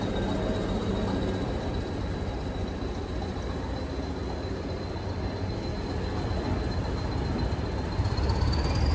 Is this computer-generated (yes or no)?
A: no